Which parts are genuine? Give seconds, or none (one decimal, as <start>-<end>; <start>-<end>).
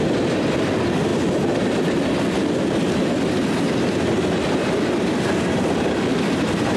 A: 0.0-6.8